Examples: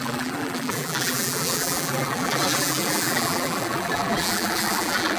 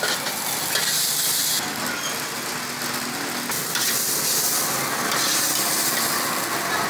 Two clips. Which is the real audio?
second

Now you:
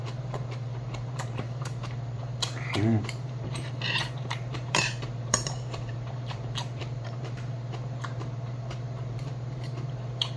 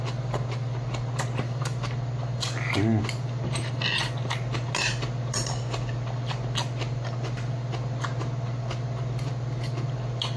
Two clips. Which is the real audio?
second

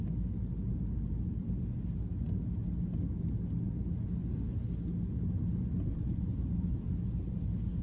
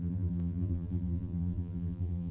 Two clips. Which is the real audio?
first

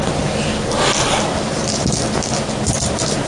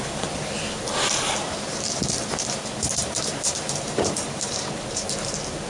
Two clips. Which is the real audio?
first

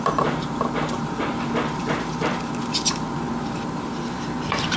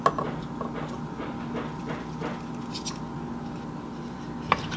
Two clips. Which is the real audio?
second